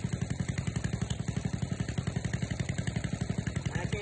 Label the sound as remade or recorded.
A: recorded